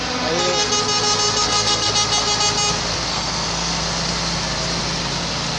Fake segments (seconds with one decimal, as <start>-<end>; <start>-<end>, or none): 1.4-1.9; 3.1-3.8